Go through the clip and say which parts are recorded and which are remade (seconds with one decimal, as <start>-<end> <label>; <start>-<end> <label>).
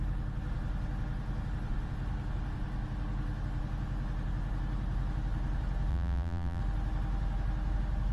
0.0-5.9 recorded; 5.9-6.6 remade; 6.6-8.1 recorded